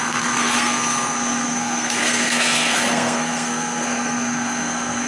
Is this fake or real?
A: fake